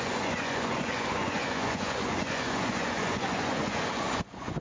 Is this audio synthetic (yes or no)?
yes